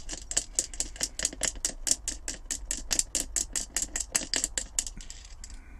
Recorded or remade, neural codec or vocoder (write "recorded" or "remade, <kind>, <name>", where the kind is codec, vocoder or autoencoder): recorded